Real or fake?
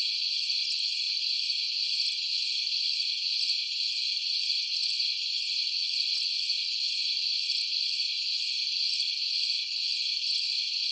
real